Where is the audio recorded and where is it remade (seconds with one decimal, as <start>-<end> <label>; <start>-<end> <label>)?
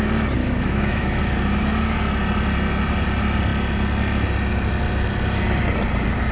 0.0-0.4 recorded; 0.4-1.2 remade; 1.2-6.3 recorded